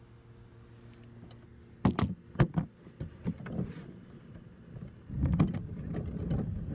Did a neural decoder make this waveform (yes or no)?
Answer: no